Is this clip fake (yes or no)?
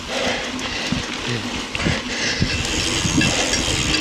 no